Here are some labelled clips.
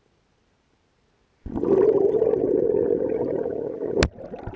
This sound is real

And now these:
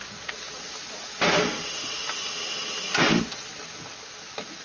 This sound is real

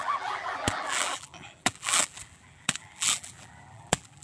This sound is fake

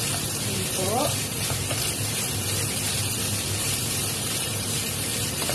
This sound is fake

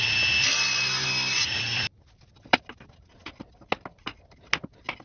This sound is real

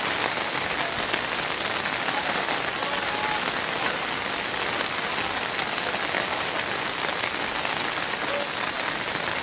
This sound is real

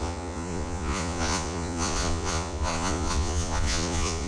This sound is fake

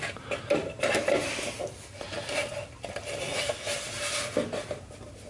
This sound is real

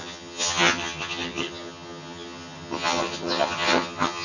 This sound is fake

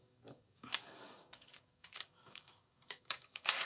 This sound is fake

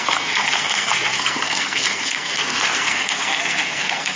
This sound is fake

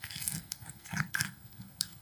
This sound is fake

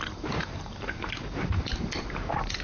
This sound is fake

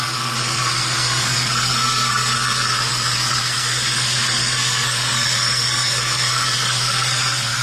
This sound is fake